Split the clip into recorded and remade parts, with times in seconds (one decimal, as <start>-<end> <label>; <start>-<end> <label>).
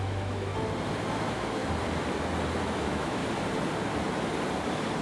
0.0-0.5 remade; 0.5-1.1 recorded; 1.1-1.6 remade; 1.6-2.6 recorded; 2.6-3.2 remade; 3.2-5.0 recorded